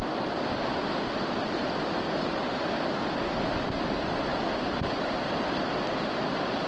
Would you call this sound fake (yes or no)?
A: no